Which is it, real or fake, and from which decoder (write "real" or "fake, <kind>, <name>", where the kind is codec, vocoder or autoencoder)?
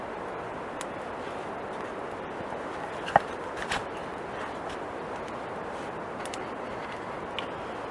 real